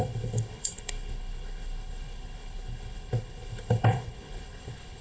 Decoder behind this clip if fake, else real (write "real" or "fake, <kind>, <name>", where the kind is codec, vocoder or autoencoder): fake, codec, HILCodec